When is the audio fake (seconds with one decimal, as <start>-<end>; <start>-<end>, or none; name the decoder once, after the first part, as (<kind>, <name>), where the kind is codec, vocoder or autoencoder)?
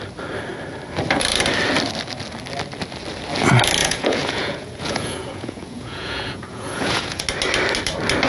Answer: 3.8-7.2 (vocoder, Vocos)